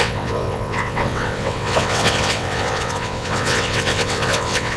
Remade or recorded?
remade